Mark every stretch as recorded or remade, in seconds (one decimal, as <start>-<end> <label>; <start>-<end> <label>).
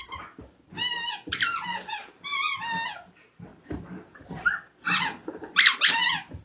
0.0-6.4 recorded